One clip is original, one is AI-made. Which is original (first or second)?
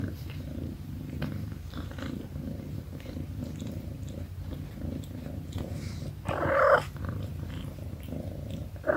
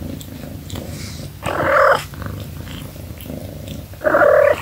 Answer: second